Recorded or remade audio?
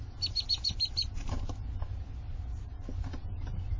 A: recorded